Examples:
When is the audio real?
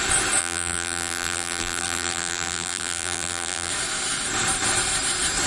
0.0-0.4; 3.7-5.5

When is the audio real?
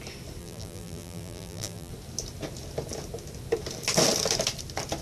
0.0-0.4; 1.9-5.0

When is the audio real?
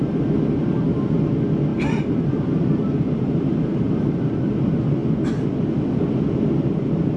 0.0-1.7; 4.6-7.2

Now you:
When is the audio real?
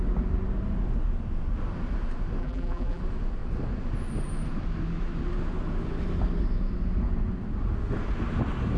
0.0-2.4; 3.0-8.8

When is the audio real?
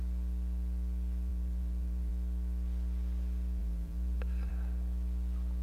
0.0-1.3; 2.1-3.6; 4.5-5.6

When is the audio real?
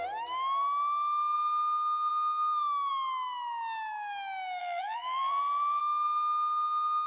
0.0-4.6; 5.8-7.1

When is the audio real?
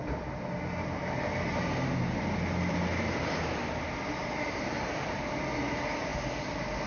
0.0-6.9